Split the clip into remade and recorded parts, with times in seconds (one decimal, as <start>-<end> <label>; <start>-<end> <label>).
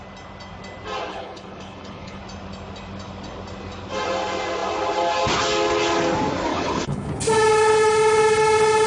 0.0-1.1 recorded; 1.1-2.2 remade; 2.2-6.5 recorded; 6.5-7.1 remade; 7.1-8.9 recorded